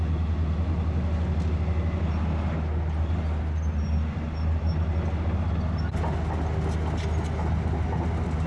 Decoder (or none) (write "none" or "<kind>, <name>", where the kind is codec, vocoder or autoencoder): none